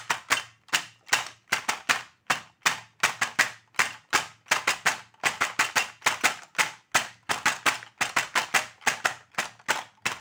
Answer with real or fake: real